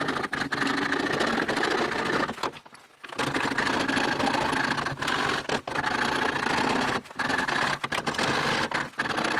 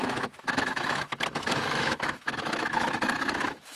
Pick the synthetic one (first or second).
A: second